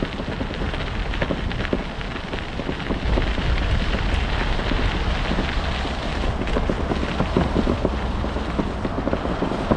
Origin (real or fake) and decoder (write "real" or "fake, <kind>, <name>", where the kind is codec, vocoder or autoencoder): real